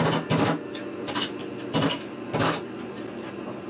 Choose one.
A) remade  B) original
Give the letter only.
B